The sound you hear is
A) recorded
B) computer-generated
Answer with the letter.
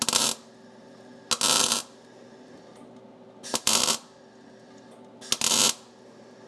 A